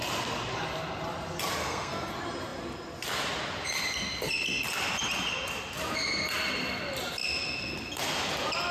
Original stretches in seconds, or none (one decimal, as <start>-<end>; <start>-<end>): 0.0-1.6; 2.1-8.7